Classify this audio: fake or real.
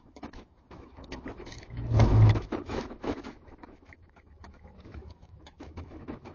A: fake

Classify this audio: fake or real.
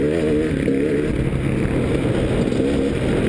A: real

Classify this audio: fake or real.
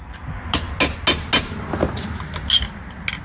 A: real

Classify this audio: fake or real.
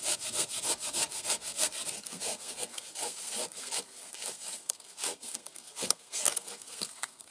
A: fake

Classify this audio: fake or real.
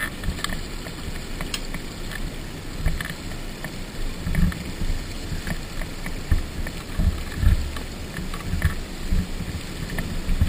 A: real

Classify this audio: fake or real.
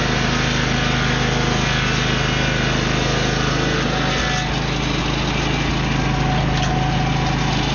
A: real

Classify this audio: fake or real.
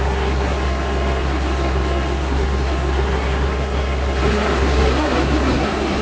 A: fake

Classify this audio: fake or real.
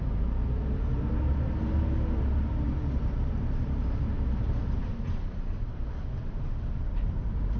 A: fake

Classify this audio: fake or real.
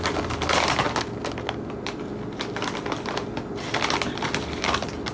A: real